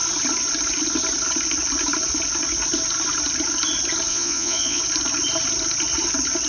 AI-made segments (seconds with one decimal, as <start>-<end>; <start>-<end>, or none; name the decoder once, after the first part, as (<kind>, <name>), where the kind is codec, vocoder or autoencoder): 4.1-4.8 (vocoder, Vocos)